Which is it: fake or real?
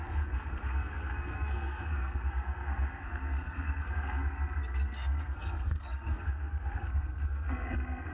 fake